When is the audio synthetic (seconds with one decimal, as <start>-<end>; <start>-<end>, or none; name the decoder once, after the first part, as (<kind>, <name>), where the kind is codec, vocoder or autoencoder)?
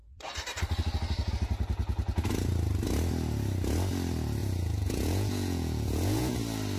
4.4-6.3 (vocoder, Vocos)